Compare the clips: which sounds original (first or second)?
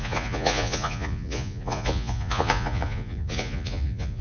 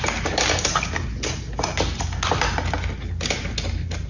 second